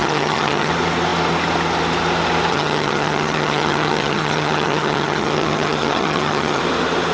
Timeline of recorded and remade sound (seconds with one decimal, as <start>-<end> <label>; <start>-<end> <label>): 0.0-0.7 remade; 0.7-2.5 recorded; 2.5-6.6 remade; 6.6-7.1 recorded